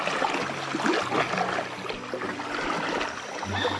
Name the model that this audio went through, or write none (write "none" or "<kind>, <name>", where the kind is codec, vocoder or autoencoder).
none